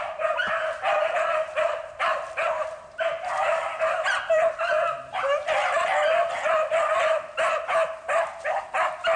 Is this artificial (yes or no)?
yes